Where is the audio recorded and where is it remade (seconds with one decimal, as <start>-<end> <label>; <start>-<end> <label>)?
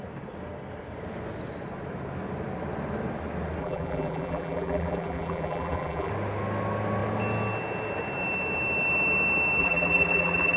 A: 0.0-3.6 recorded; 3.6-6.1 remade; 6.1-9.6 recorded; 9.6-10.6 remade